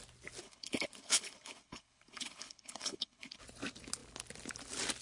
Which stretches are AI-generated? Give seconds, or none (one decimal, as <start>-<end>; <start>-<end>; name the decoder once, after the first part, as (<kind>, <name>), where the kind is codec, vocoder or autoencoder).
0.4-3.4 (codec, HILCodec)